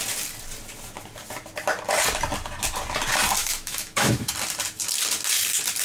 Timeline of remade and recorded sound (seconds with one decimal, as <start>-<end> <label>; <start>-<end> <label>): 0.0-3.4 recorded; 3.4-4.3 remade; 4.3-5.8 recorded